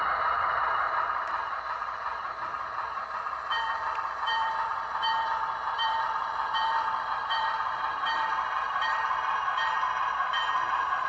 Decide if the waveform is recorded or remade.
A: remade